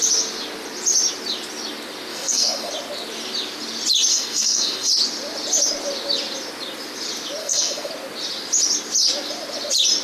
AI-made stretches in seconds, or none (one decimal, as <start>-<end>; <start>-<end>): 2.1-2.7; 4.1-4.9; 7.4-7.9